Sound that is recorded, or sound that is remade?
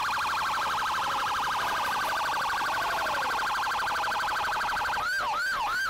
remade